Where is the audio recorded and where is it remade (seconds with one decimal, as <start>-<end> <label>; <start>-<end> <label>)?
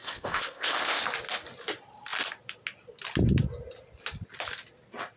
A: 0.0-1.0 remade; 1.0-5.2 recorded